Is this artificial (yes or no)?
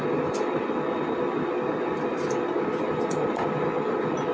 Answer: no